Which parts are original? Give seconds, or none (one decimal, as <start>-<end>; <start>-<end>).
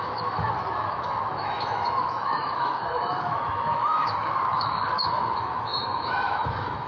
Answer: none